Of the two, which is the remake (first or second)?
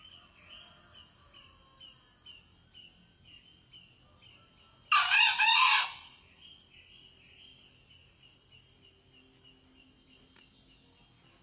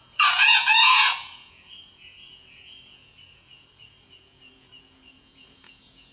second